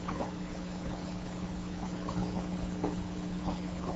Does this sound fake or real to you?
fake